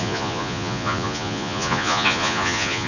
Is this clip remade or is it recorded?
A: remade